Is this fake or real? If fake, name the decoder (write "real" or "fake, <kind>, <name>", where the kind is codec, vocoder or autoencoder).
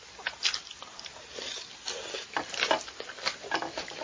real